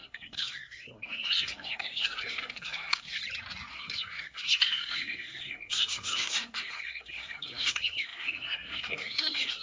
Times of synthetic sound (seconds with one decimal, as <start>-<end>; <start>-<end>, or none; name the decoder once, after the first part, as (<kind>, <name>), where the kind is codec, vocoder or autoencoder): 0.0-3.2 (codec, SNAC); 3.7-9.6